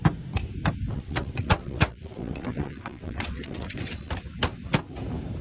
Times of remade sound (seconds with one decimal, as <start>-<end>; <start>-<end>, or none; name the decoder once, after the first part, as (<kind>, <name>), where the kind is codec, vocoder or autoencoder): 0.9-4.1 (vocoder, WaveNeXt)